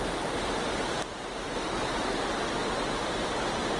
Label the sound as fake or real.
real